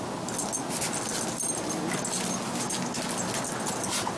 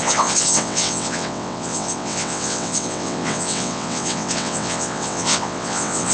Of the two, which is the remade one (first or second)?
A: second